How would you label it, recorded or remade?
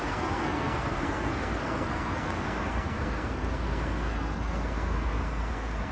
remade